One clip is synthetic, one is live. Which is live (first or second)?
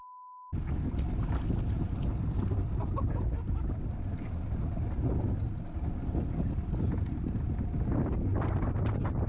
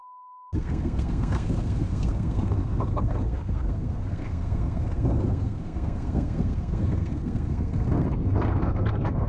first